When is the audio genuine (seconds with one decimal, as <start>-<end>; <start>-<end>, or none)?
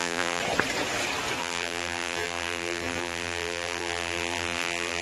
0.4-1.4